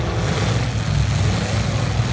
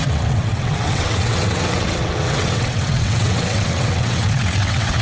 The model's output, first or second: second